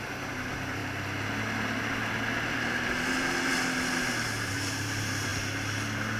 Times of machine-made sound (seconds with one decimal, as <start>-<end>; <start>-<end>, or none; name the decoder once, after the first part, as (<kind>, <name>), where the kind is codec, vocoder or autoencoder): 0.0-0.8 (vocoder, BigVGAN v2); 4.5-5.3